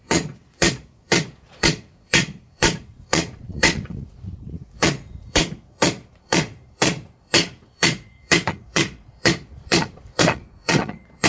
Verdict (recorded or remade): remade